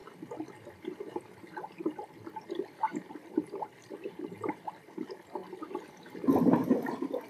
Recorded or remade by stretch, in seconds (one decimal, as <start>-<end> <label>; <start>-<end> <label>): 0.0-2.9 recorded; 2.9-4.6 remade; 4.6-7.3 recorded